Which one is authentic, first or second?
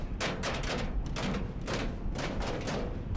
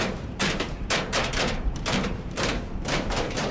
first